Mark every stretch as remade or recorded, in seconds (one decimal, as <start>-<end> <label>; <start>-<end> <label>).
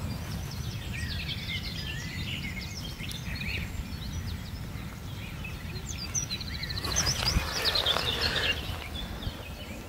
0.0-6.6 recorded; 6.6-9.4 remade; 9.4-9.9 recorded